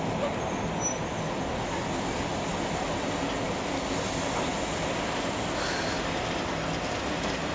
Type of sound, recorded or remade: recorded